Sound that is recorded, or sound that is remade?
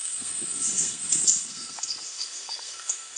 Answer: remade